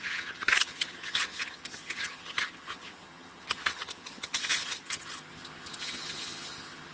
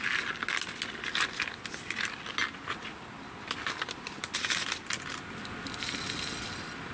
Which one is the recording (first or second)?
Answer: second